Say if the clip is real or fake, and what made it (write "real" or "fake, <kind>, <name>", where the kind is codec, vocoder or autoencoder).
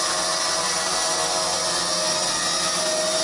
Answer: real